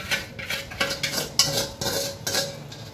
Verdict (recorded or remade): recorded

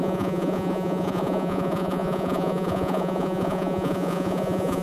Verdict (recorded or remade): remade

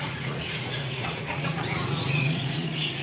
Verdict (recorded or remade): remade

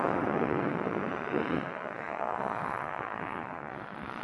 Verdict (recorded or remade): remade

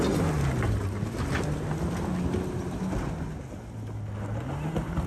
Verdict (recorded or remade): recorded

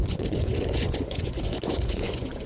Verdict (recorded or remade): remade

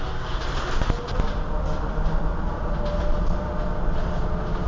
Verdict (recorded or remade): recorded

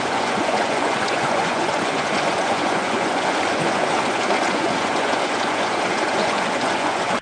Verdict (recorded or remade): remade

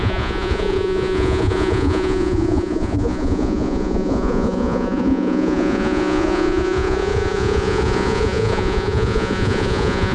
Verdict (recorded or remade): remade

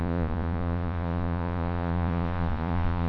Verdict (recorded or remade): remade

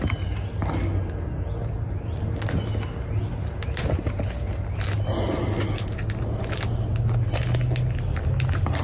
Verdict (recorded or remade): recorded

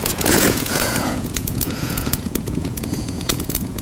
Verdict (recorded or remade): remade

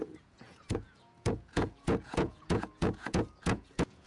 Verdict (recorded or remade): remade